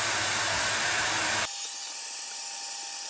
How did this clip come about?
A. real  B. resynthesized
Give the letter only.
A